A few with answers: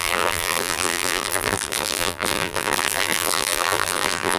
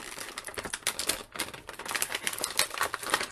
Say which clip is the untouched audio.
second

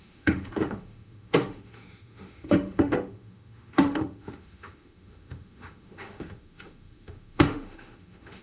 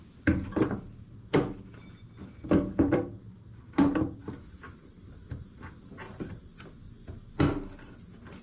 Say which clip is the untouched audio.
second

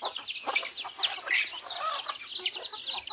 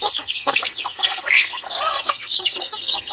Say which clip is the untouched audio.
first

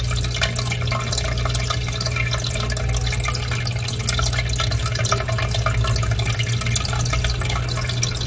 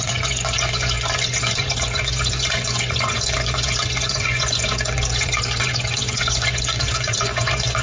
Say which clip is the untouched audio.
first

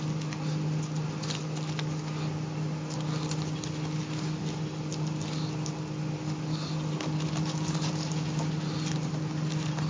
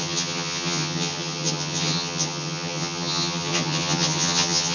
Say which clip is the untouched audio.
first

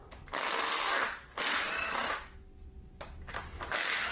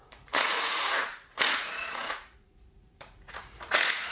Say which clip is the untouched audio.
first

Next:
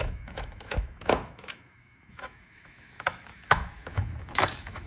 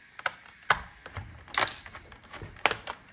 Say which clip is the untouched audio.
second